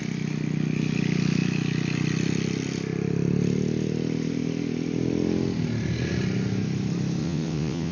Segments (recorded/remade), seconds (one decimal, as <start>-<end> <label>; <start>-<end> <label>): 0.0-7.2 recorded; 7.2-7.9 remade